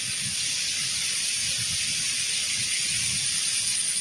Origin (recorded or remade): recorded